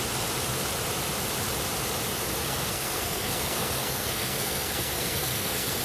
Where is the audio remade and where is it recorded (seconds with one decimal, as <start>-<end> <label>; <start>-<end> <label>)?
0.0-2.4 recorded; 2.4-5.8 remade